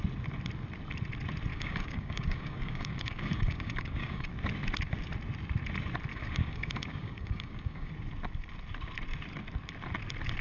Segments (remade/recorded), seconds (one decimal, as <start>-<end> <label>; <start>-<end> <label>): 0.0-1.5 recorded; 1.5-4.3 remade; 4.3-6.1 recorded; 6.1-7.9 remade; 7.9-10.4 recorded